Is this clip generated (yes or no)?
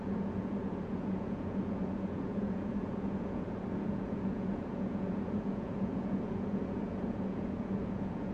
yes